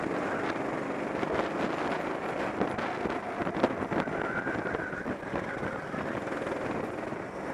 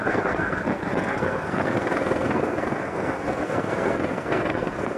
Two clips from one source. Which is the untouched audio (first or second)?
first